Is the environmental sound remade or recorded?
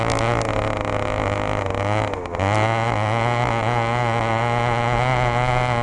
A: recorded